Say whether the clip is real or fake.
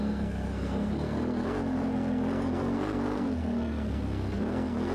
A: fake